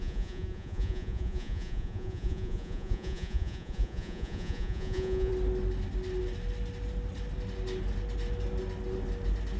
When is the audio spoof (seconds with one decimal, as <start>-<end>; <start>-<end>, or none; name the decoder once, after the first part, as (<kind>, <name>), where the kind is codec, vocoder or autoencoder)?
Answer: 0.0-5.3 (vocoder, Vocos)